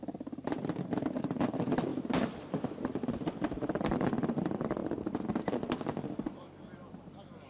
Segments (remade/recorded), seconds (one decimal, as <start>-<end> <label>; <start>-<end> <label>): 0.0-1.9 recorded; 1.9-3.8 remade; 3.8-7.5 recorded